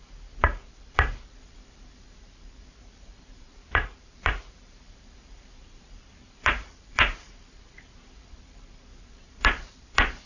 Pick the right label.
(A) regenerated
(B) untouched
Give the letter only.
A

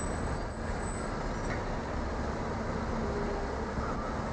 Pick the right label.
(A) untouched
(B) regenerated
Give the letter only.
A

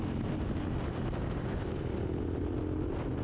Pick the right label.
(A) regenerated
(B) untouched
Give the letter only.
B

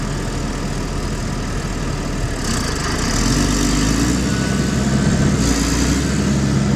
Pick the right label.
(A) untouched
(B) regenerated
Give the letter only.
A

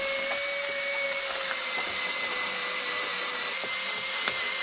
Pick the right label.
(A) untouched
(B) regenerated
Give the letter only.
A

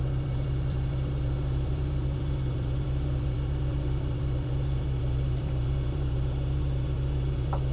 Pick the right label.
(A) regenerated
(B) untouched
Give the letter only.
A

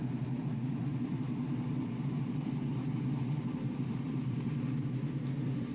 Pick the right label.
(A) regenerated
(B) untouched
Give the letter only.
A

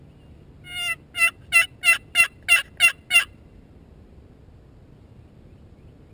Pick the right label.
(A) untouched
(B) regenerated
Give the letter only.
A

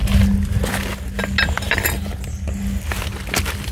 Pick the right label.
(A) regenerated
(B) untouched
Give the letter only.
B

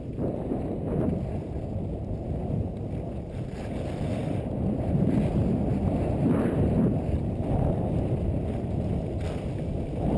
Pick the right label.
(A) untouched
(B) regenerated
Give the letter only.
B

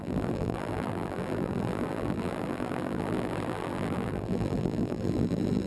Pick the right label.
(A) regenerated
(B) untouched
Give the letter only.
A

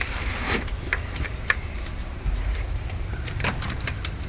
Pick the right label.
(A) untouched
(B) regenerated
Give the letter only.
B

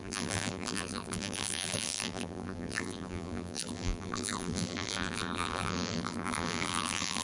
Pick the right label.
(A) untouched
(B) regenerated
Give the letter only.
B